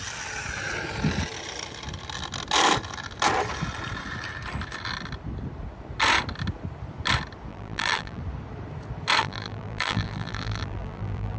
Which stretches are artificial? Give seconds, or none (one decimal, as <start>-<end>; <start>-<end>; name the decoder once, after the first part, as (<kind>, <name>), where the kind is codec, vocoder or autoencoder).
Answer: 7.5-8.2 (vocoder, BigVGAN v2); 9.2-11.4